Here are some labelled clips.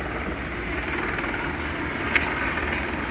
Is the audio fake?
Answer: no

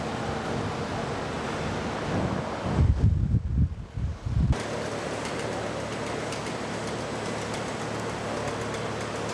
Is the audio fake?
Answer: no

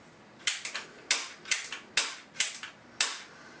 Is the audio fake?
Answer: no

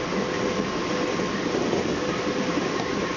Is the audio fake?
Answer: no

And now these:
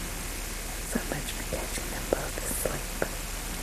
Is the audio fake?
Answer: no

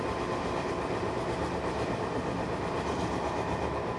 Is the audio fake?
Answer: no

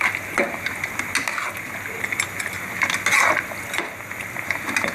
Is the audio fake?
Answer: no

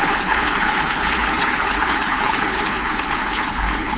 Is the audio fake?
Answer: yes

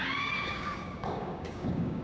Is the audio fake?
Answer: yes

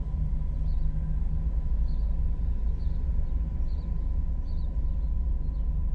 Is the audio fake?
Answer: no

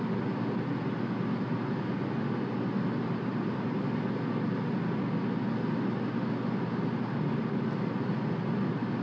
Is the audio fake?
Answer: no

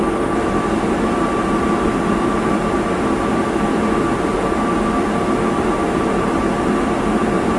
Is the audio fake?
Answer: no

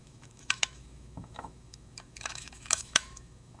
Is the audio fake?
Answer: yes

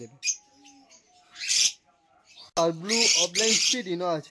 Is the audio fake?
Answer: no